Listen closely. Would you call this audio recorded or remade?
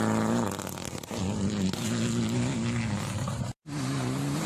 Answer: recorded